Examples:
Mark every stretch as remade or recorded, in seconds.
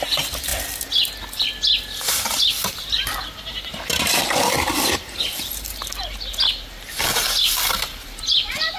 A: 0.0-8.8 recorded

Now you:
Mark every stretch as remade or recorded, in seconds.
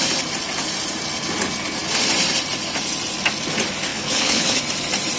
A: 0.0-3.9 recorded; 3.9-4.6 remade; 4.6-5.2 recorded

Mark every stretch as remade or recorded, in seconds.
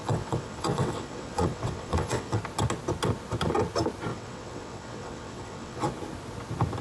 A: 0.0-2.4 remade; 2.4-4.1 recorded; 4.1-5.9 remade; 5.9-6.8 recorded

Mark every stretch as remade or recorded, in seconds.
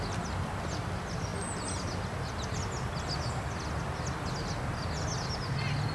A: 0.0-5.9 recorded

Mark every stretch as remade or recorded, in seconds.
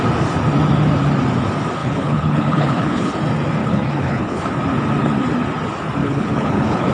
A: 0.0-1.8 recorded; 1.8-3.1 remade; 3.1-3.6 recorded; 3.6-4.4 remade; 4.4-6.0 recorded; 6.0-6.9 remade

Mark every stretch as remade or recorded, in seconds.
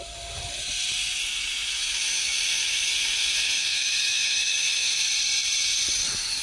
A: 0.0-1.2 recorded; 1.2-5.0 remade; 5.0-6.4 recorded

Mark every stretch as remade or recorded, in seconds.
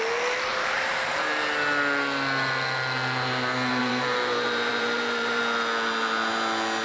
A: 0.0-0.5 recorded; 0.5-1.3 remade; 1.3-3.8 recorded; 3.8-5.4 remade; 5.4-6.8 recorded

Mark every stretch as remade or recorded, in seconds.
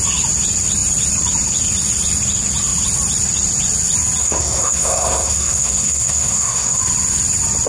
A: 0.0-4.2 recorded; 4.2-6.8 remade; 6.8-7.7 recorded